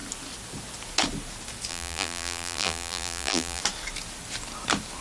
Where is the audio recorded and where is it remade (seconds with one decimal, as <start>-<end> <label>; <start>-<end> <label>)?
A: 0.0-1.7 recorded; 1.7-3.6 remade; 3.6-5.0 recorded